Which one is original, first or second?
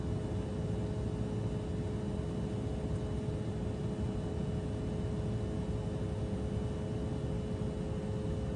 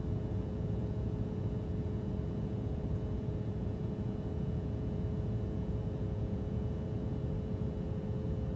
first